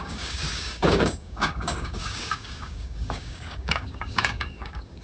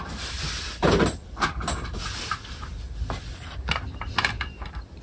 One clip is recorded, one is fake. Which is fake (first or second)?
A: first